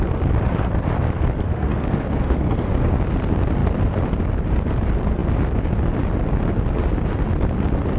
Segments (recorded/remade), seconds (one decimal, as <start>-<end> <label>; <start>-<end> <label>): 0.0-1.4 recorded; 1.4-3.0 remade; 3.0-8.0 recorded